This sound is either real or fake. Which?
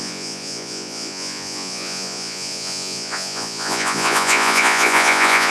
fake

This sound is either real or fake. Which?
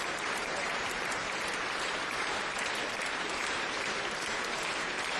fake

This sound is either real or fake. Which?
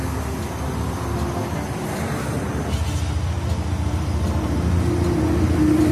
real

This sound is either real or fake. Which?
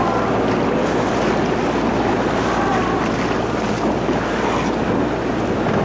real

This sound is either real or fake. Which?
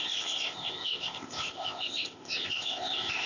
fake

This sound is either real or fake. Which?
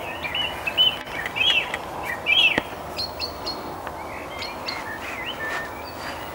real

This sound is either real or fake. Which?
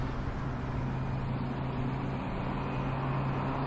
real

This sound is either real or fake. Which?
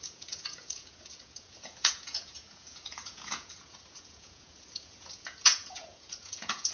fake